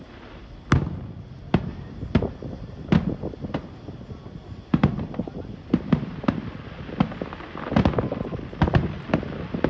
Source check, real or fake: real